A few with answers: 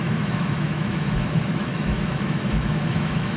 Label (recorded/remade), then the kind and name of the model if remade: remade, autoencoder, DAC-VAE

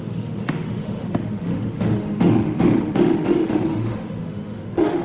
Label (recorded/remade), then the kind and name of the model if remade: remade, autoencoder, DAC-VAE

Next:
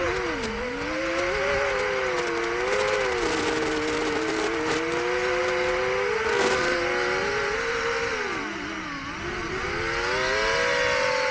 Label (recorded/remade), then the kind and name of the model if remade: recorded